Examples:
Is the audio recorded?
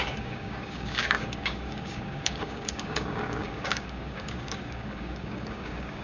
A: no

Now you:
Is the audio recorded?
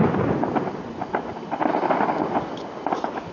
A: yes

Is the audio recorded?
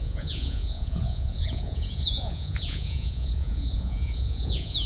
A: no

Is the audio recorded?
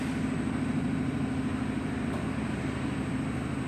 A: yes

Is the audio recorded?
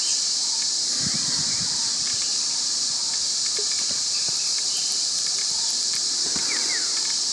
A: no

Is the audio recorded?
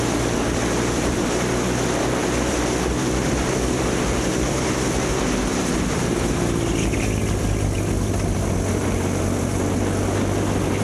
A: no